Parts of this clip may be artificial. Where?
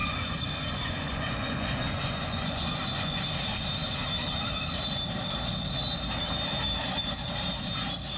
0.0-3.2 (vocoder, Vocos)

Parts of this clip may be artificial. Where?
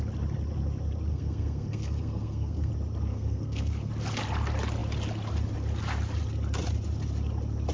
1.1-2.7 (codec, SNAC); 3.1-3.9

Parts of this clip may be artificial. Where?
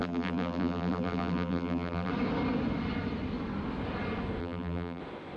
0.0-2.1 (vocoder, BigVGAN v2); 4.4-5.0